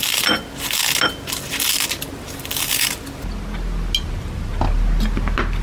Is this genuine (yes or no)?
yes